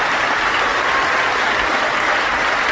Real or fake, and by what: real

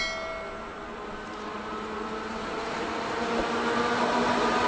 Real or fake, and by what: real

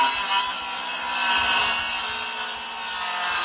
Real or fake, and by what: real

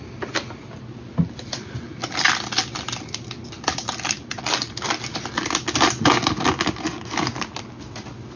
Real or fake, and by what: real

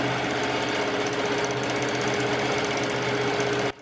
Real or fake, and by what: real